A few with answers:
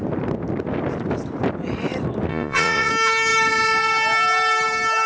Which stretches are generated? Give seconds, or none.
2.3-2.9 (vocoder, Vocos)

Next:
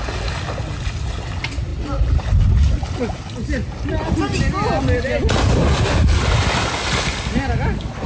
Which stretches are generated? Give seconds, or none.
none

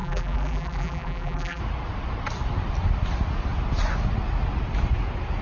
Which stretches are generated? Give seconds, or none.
0.0-1.6 (vocoder, BigVGAN v2)

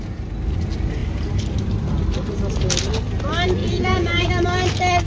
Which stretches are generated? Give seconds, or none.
3.6-4.3 (vocoder, Vocos)

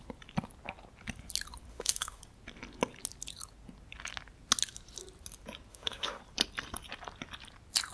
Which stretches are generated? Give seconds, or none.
1.7-2.2 (autoencoder, DAC-VAE); 5.7-6.2

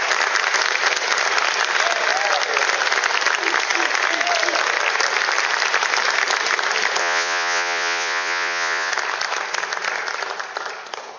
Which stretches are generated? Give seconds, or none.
7.0-8.9 (vocoder, Vocos)

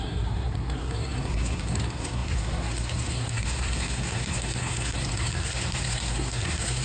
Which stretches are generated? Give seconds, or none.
0.0-6.8 (codec, SNAC)